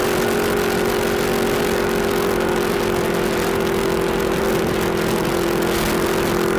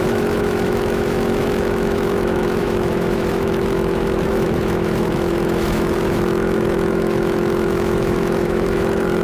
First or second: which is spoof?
second